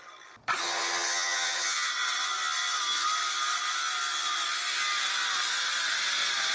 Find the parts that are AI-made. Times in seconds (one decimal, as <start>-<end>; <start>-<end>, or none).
0.6-1.9